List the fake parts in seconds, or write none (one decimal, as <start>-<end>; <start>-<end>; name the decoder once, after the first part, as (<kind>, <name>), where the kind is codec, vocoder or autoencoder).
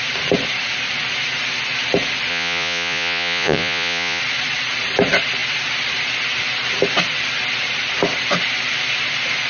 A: 2.3-4.2 (vocoder, Vocos)